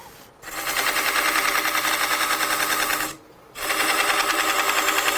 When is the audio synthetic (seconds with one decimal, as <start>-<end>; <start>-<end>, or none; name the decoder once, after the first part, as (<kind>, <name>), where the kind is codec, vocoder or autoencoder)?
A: 2.9-4.7 (vocoder, BigVGAN v2)